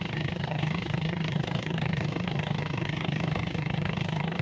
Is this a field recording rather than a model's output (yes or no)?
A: no